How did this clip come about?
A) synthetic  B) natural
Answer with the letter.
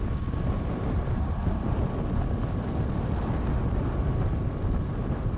B